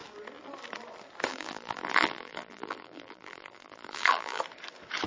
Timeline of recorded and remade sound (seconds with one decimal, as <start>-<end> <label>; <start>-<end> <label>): 0.0-1.3 recorded; 1.3-4.4 remade; 4.4-5.1 recorded